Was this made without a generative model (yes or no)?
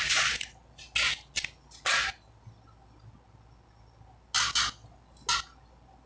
yes